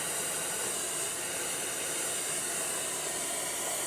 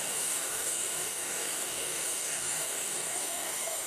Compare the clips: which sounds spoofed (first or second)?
second